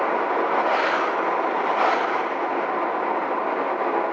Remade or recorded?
recorded